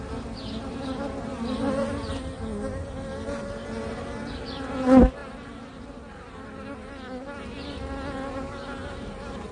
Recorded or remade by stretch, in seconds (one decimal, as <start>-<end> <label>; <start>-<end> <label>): 0.0-9.5 recorded